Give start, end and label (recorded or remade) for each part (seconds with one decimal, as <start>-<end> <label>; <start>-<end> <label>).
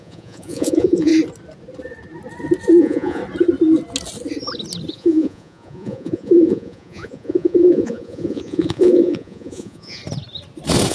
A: 0.0-1.1 remade; 1.1-2.8 recorded; 2.8-3.2 remade; 3.2-4.9 recorded; 4.9-10.0 remade; 10.0-10.9 recorded